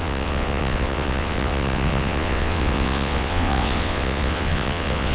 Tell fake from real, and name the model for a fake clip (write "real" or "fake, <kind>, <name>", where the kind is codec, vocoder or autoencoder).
fake, vocoder, WaveNeXt